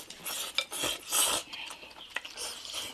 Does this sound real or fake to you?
real